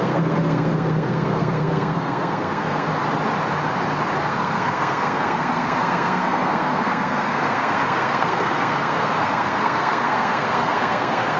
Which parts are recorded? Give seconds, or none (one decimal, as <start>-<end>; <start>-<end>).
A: 2.9-4.2